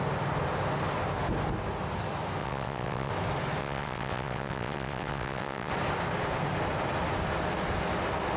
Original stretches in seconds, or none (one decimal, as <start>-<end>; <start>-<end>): 0.0-2.4; 3.1-3.6; 5.7-8.4